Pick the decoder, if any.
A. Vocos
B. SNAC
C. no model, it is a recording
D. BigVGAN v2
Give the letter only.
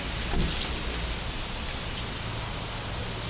C